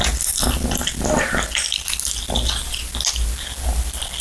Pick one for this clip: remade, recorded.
recorded